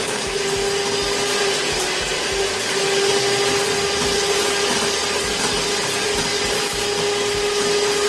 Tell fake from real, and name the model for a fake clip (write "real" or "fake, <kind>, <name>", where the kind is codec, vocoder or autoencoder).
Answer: real